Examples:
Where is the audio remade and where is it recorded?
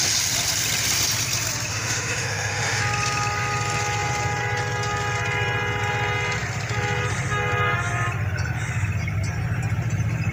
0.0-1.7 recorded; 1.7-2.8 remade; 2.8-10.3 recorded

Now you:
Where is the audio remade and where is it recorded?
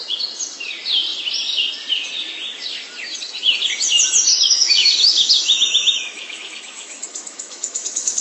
0.0-4.3 recorded; 4.3-8.2 remade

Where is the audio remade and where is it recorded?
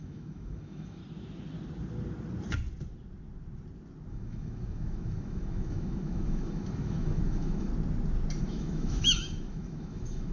0.0-1.0 remade; 1.0-4.1 recorded; 4.1-7.7 remade; 7.7-8.4 recorded; 8.4-10.3 remade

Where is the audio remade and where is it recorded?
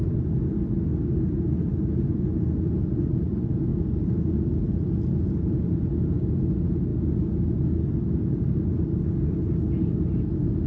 0.0-10.7 recorded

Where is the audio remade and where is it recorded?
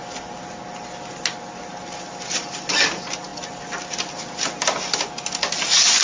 0.0-6.0 recorded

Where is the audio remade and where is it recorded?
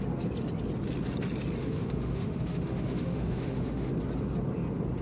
0.0-1.6 recorded; 1.6-3.9 remade; 3.9-5.0 recorded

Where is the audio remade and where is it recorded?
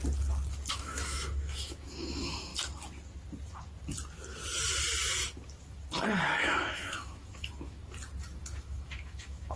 0.0-0.7 recorded; 0.7-2.5 remade; 2.5-6.4 recorded; 6.4-7.8 remade; 7.8-8.6 recorded; 8.6-9.6 remade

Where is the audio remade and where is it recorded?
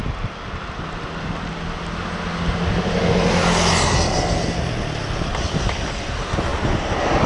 0.0-7.3 recorded